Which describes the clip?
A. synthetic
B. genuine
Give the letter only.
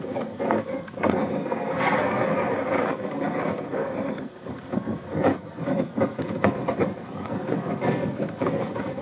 A